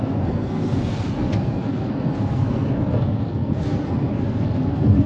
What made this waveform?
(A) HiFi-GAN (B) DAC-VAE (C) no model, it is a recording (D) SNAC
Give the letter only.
D